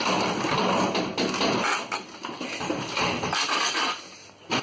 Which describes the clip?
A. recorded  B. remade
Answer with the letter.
A